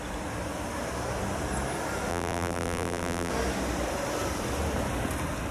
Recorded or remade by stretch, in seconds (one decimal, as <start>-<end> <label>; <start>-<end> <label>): 0.0-2.1 recorded; 2.1-3.3 remade; 3.3-5.5 recorded